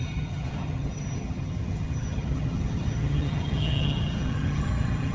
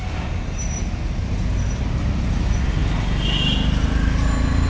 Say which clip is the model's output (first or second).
first